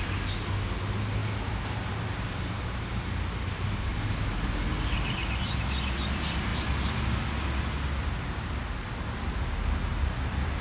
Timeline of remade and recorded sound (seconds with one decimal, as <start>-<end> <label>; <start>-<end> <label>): 0.0-10.6 recorded